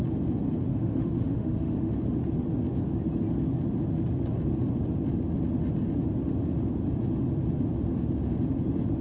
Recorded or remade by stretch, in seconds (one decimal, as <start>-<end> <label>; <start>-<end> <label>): 0.0-0.7 recorded; 0.7-1.9 remade; 1.9-9.0 recorded